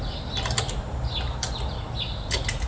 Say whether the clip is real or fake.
real